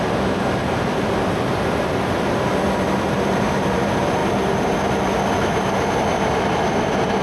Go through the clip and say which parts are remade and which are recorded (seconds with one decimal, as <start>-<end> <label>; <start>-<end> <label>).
0.0-1.2 remade; 1.2-3.0 recorded; 3.0-4.2 remade; 4.2-4.9 recorded; 4.9-7.2 remade